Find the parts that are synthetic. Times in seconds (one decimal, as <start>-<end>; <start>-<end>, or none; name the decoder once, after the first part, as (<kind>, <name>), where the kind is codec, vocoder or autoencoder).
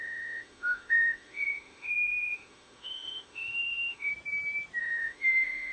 0.0-4.1 (autoencoder, DAC-VAE); 4.8-5.7